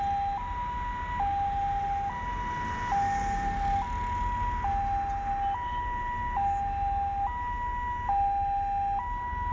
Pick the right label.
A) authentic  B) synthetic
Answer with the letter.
A